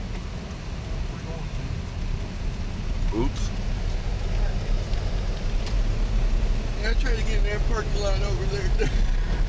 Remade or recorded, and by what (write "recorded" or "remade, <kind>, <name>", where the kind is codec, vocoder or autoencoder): recorded